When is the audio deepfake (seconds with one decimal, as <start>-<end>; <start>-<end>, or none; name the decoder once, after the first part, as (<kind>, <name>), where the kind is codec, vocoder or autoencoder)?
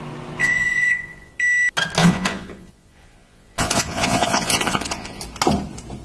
0.4-1.3 (vocoder, Vocos); 2.0-5.2